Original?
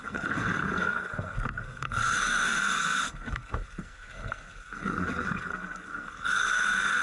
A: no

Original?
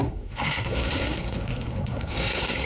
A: no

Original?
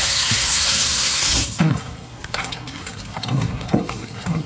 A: no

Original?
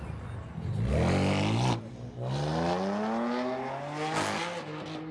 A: yes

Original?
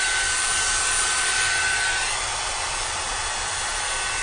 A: yes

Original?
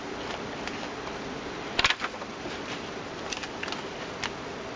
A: yes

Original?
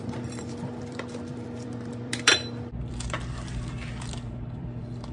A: no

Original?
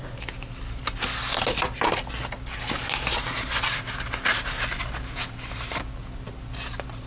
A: yes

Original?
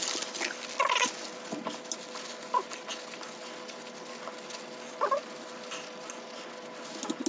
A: yes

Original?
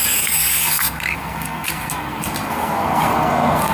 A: no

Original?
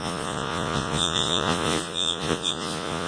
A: no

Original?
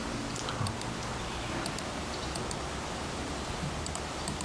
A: yes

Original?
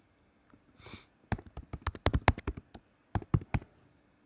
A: yes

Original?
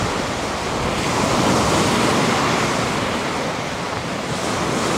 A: yes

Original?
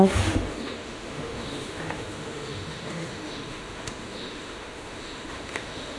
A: no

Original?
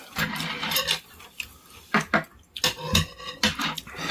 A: yes